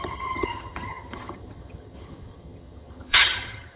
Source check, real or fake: fake